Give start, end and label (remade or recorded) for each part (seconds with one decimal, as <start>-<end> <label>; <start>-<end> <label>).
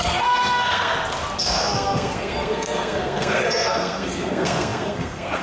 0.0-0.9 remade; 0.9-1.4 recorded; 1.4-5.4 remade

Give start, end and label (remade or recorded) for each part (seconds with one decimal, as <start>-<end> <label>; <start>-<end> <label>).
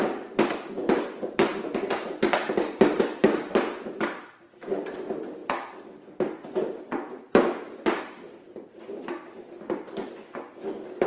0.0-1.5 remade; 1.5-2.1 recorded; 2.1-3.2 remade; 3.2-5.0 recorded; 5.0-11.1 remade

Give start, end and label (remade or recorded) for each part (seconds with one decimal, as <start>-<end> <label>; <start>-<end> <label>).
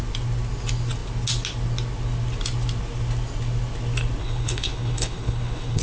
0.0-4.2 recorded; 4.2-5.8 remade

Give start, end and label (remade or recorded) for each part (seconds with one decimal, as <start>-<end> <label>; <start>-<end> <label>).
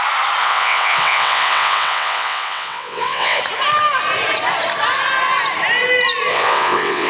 0.0-0.4 recorded; 0.4-3.4 remade; 3.4-6.3 recorded; 6.3-7.1 remade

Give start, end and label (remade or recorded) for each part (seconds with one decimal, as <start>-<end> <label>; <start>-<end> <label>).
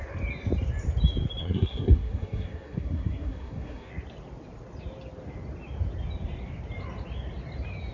0.0-1.4 recorded; 1.4-3.9 remade; 3.9-7.9 recorded